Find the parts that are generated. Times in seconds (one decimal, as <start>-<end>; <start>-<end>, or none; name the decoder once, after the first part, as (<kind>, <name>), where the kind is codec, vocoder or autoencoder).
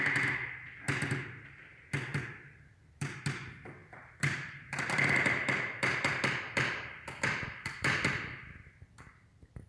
2.1-3.2 (vocoder, BigVGAN v2); 3.8-8.9